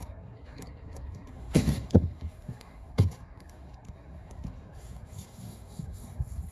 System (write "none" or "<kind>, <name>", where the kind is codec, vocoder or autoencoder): codec, SNAC